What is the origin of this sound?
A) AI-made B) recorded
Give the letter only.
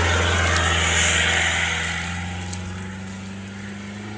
B